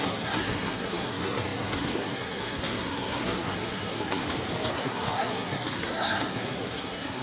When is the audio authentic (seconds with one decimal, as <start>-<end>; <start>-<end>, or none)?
4.2-4.7